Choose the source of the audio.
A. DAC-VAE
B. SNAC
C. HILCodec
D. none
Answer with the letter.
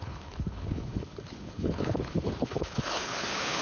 C